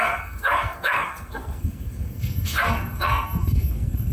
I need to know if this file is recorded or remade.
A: remade